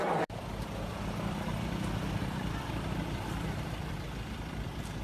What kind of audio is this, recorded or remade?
remade